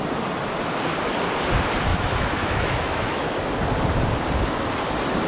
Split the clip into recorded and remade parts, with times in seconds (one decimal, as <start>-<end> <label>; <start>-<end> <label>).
0.0-1.9 recorded; 1.9-3.5 remade; 3.5-5.3 recorded